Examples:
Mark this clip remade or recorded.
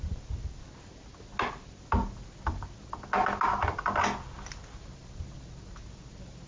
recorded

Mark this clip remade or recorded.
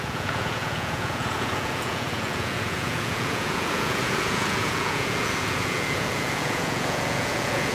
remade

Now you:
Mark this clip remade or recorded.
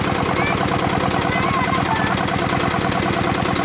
recorded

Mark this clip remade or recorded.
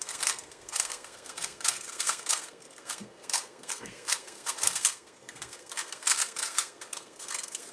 remade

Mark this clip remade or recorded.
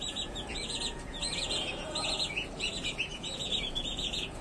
remade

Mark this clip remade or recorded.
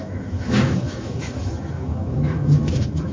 remade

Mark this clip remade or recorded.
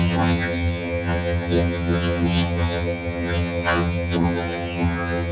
remade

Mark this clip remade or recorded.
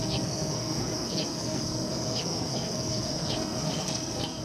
remade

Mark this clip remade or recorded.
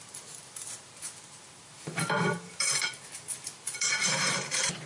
remade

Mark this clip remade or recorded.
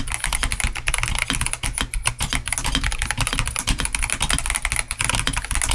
recorded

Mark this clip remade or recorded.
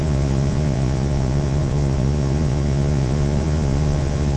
remade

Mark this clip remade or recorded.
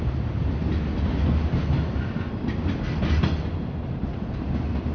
recorded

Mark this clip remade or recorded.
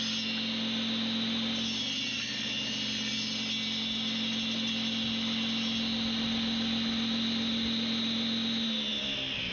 recorded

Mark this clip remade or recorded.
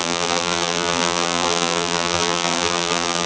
remade